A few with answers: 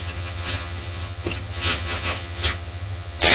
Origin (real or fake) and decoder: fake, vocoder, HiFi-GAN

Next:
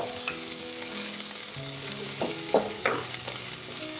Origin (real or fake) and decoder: fake, codec, DAC